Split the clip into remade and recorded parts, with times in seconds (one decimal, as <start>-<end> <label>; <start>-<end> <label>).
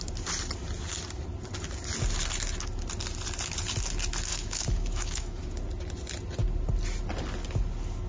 0.0-4.3 recorded; 4.3-5.4 remade; 5.4-8.1 recorded